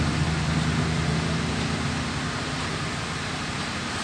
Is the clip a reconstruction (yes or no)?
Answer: no